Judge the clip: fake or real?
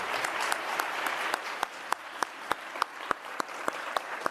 fake